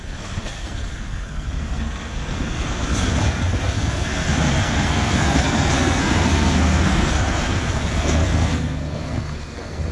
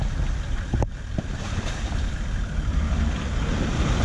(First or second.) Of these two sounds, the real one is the second